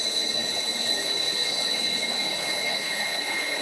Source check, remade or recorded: remade